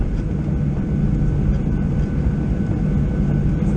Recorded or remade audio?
recorded